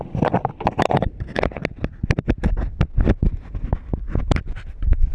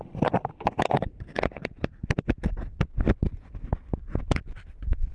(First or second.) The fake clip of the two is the second